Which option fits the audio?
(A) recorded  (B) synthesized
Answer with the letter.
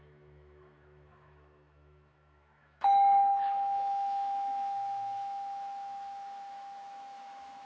B